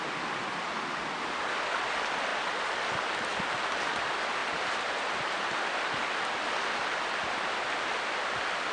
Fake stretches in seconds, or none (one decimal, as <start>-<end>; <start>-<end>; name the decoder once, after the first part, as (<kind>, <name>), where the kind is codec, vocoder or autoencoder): none